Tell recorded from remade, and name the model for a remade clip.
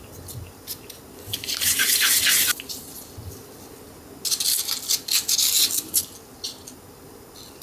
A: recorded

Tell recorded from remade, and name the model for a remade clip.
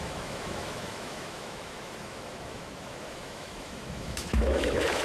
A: remade, autoencoder, DAC-VAE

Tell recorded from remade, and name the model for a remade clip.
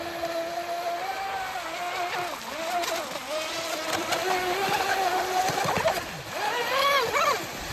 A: recorded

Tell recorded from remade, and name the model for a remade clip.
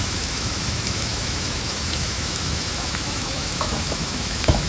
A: remade, autoencoder, DAC-VAE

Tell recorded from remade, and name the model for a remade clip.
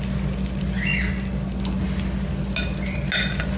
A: recorded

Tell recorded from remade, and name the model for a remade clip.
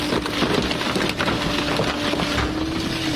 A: recorded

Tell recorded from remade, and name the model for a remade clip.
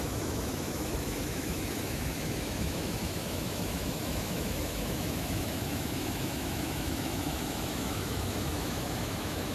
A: remade, autoencoder, DAC-VAE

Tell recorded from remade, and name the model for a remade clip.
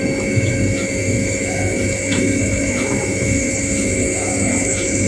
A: remade, autoencoder, DAC-VAE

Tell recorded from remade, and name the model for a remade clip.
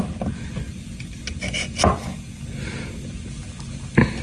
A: recorded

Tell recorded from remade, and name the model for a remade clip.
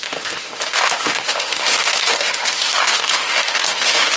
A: remade, autoencoder, DAC-VAE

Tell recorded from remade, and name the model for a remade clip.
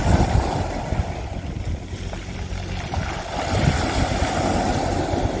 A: recorded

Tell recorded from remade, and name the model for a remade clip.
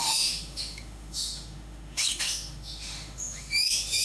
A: remade, autoencoder, DAC-VAE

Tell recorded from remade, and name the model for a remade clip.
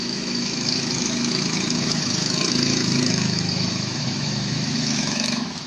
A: remade, autoencoder, DAC-VAE